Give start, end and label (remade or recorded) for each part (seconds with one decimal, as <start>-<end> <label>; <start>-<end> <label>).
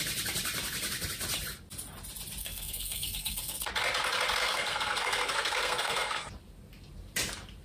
0.0-2.4 recorded; 2.4-3.7 remade; 3.7-4.4 recorded; 4.4-6.3 remade; 6.3-7.6 recorded